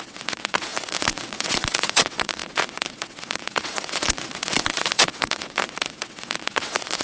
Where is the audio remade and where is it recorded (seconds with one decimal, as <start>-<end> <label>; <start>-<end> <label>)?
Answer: 0.0-7.0 remade